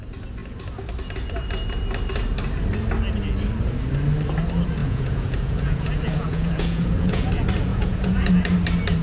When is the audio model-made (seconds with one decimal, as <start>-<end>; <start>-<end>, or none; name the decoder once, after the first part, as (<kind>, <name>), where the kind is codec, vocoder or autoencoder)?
4.8-7.3 (vocoder, Vocos); 7.7-8.3